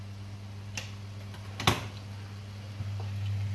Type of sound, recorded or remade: recorded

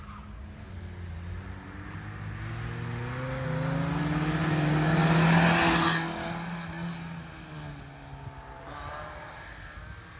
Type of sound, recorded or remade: recorded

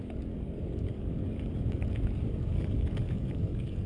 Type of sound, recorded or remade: remade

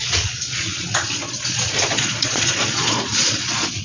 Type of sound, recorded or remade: remade